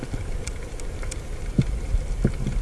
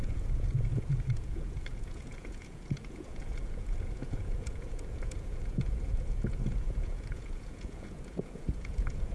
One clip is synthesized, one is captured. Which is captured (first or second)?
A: first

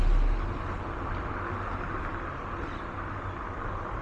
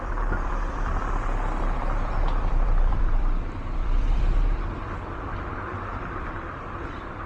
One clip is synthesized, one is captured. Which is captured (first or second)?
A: first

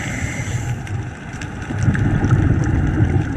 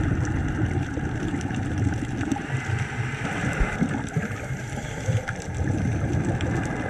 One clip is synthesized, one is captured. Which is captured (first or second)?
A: second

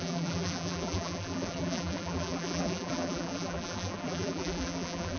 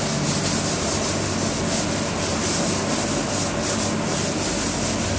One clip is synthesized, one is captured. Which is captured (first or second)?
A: second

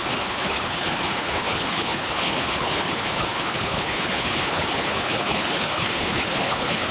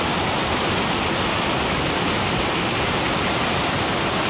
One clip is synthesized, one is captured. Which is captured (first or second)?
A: second